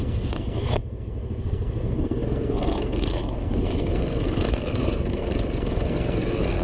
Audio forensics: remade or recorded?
remade